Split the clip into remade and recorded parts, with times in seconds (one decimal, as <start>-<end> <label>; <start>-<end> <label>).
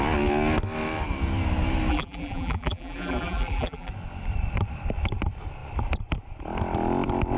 0.0-1.9 recorded; 1.9-3.9 remade; 3.9-7.4 recorded